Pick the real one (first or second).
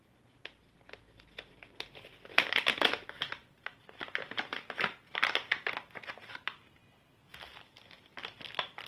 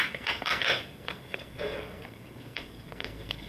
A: first